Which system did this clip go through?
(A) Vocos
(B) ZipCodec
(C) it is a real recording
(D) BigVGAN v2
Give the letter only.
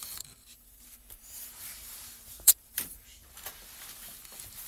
D